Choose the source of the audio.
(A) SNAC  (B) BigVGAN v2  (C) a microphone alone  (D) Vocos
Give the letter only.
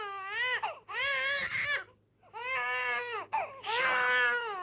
C